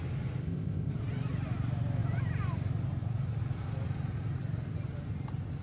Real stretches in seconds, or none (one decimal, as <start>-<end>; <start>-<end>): 0.0-0.4; 0.9-5.6